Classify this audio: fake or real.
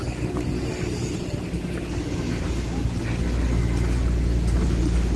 real